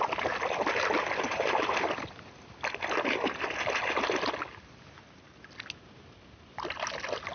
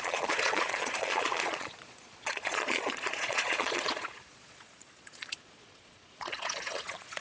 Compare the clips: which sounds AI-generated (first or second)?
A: second